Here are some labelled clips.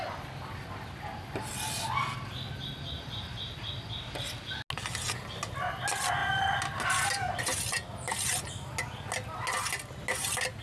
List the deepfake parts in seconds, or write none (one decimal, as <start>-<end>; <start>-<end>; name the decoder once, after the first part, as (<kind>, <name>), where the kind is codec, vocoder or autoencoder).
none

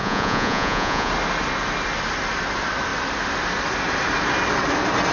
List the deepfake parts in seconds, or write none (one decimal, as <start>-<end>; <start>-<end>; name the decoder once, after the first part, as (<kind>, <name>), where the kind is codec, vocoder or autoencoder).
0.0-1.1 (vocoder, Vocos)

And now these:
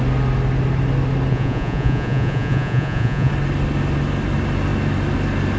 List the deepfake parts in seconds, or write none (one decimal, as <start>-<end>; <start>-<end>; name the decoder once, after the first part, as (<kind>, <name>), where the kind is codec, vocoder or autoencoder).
1.3-3.3 (vocoder, Vocos)

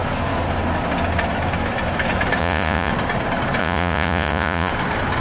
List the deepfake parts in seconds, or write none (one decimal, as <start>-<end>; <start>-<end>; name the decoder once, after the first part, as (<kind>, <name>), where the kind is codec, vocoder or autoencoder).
2.4-2.9 (vocoder, Vocos); 3.6-4.7

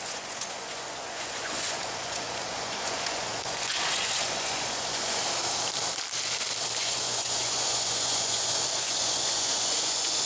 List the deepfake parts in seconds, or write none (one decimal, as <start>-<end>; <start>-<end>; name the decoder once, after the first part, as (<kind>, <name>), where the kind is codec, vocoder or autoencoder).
0.0-5.2 (vocoder, Vocos); 6.8-10.3

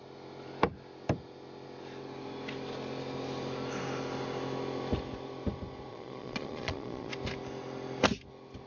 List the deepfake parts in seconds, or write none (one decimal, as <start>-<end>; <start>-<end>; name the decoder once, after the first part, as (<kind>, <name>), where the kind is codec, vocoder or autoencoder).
5.9-7.1 (vocoder, Vocos)

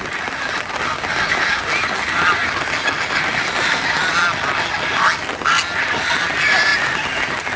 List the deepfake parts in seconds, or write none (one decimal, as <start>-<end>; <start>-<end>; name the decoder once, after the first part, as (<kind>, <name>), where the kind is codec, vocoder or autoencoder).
none

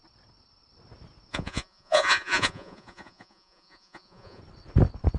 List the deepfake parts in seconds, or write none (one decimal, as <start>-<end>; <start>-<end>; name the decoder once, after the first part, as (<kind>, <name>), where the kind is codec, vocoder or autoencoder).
1.3-4.4 (vocoder, Vocos)